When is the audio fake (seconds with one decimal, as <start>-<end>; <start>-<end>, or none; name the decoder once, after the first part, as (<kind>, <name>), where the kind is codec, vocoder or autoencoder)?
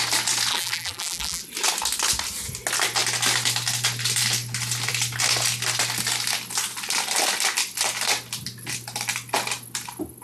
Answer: 0.5-1.4 (vocoder, BigVGAN v2)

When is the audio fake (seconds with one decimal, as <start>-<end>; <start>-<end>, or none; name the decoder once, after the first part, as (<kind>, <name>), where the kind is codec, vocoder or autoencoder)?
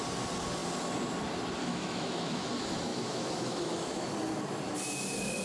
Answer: 1.6-2.5 (autoencoder, DAC-VAE); 2.9-4.1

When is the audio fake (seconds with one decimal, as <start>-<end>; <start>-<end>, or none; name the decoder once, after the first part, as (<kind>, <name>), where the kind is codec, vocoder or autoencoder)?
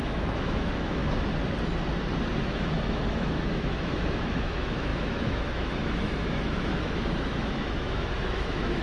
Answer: 0.0-1.0 (autoencoder, DAC-VAE); 2.4-8.8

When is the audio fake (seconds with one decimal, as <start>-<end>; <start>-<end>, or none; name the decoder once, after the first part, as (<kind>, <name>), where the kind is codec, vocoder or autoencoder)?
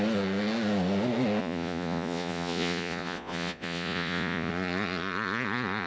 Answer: 1.4-4.5 (vocoder, Vocos)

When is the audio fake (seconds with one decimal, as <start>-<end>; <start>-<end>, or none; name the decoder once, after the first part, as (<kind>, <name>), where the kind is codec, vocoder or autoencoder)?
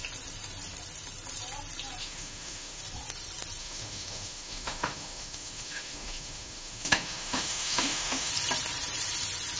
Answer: 2.0-2.8 (autoencoder, DAC-VAE); 3.6-8.3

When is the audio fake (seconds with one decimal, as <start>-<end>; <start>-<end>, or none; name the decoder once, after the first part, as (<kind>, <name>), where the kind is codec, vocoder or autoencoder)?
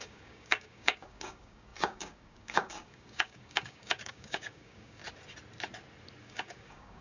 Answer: 0.0-5.0 (codec, DAC); 6.2-7.0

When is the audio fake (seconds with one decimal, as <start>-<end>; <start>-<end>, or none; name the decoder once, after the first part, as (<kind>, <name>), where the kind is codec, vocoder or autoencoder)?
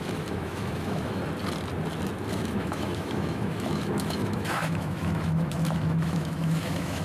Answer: 0.0-1.2 (autoencoder, DAC-VAE); 2.3-7.0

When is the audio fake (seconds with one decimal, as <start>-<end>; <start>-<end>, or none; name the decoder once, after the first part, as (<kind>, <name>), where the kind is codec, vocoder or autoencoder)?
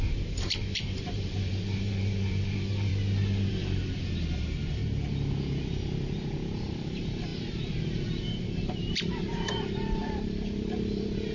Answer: 0.0-2.9 (vocoder, BigVGAN v2); 3.5-4.8; 6.7-11.3